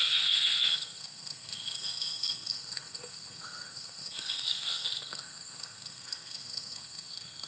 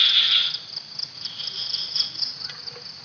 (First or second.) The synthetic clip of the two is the first